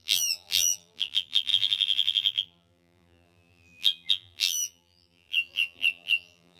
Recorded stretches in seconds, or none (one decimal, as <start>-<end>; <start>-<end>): none